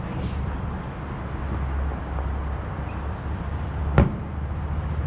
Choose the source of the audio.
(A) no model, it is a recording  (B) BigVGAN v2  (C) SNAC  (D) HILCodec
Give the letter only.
A